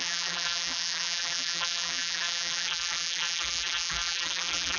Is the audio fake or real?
fake